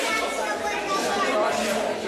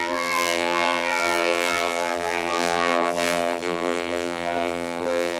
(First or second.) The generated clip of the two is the second